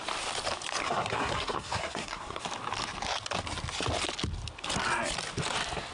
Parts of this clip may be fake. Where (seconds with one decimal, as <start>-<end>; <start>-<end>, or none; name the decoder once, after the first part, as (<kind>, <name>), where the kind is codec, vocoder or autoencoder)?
0.8-2.4 (codec, SNAC)